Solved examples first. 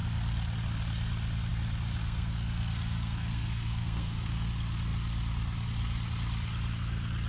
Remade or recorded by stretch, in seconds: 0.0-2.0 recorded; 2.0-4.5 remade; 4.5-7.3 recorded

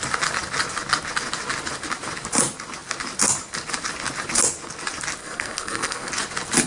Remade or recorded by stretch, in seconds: 0.0-5.2 recorded; 5.2-6.1 remade; 6.1-6.7 recorded

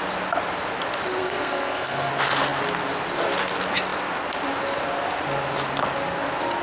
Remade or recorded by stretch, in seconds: 0.0-1.2 recorded; 1.2-2.1 remade; 2.1-6.6 recorded

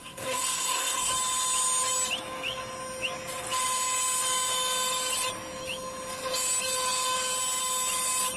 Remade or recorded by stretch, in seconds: 0.0-1.1 remade; 1.1-8.4 recorded

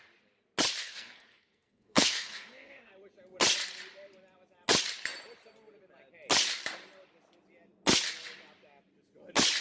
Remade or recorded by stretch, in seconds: 0.0-0.8 recorded; 0.8-2.9 remade; 2.9-9.6 recorded

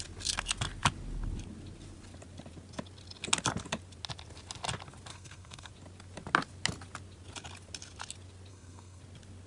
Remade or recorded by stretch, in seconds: 0.0-5.1 recorded; 5.1-5.7 remade; 5.7-8.5 recorded; 8.5-9.0 remade; 9.0-9.5 recorded

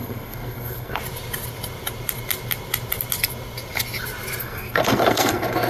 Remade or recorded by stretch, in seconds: 0.0-1.0 remade; 1.0-4.4 recorded; 4.4-5.7 remade

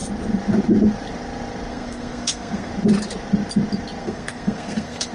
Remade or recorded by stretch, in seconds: 0.0-1.7 recorded; 1.7-2.7 remade; 2.7-4.0 recorded; 4.0-5.1 remade